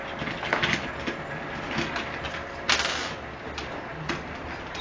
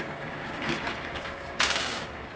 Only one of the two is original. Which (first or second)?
first